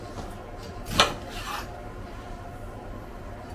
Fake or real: real